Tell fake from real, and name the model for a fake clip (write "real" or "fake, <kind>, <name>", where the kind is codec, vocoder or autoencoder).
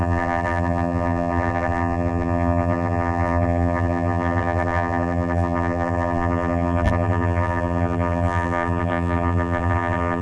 fake, vocoder, BigVGAN v2